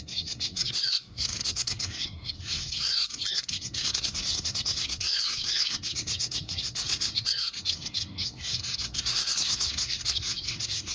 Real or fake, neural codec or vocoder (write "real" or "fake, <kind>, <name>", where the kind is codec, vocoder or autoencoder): fake, codec, SNAC